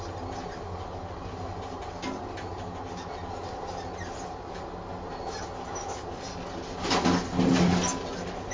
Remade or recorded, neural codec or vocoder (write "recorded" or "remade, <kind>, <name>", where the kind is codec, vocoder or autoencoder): recorded